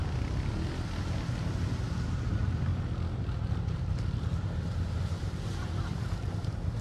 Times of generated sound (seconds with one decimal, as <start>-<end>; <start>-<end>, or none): 1.8-2.7; 3.7-6.8